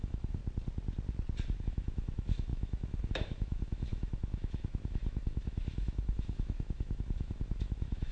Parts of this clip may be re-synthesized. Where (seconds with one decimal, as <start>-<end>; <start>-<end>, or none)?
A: 0.0-0.4; 1.6-8.1